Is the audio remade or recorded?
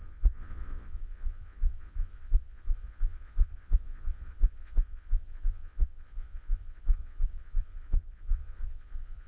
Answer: remade